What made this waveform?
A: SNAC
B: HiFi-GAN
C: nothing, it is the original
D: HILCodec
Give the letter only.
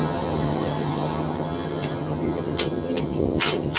B